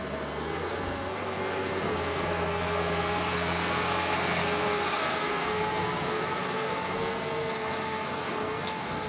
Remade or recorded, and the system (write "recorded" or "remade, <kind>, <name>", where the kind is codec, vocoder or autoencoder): remade, codec, SNAC